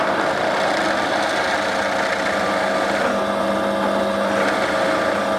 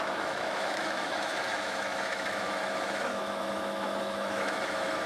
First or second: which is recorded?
first